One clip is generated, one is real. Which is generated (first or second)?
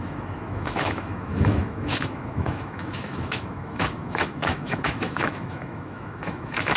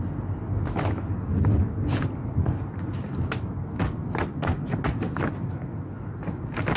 first